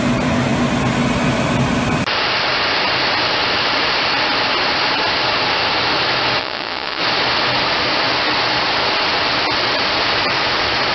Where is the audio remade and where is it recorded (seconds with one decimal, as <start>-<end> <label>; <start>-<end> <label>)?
0.0-6.4 recorded; 6.4-7.0 remade; 7.0-10.9 recorded